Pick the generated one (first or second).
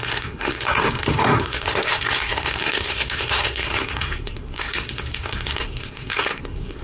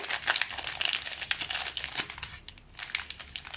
first